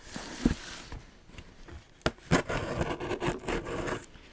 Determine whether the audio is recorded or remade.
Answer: recorded